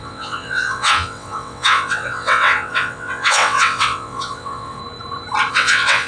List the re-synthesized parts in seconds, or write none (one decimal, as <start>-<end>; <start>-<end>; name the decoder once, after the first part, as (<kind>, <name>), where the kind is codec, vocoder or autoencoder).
0.0-4.8 (vocoder, WaveNeXt); 5.5-6.1